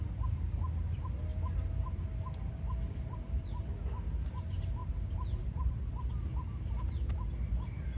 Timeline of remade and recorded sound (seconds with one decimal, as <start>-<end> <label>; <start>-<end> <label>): 0.0-4.8 recorded; 4.8-5.7 remade; 5.7-8.0 recorded